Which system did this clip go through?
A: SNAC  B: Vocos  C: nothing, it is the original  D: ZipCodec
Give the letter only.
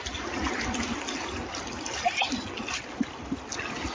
C